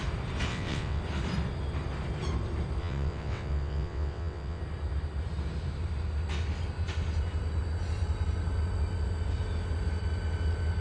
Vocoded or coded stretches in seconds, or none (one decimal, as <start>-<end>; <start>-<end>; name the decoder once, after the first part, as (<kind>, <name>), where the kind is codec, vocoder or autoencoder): 0.5-1.0 (vocoder, WaveNeXt); 2.8-4.6